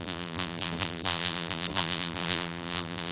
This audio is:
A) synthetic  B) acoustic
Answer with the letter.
A